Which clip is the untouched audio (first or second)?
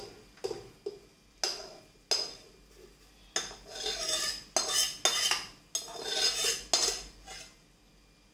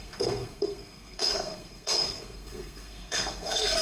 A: first